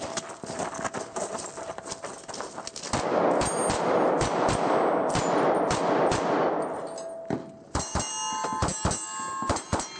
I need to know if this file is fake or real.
real